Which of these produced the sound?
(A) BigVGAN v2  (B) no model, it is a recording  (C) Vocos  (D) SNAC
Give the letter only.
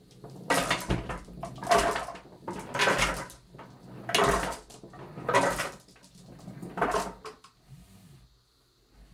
B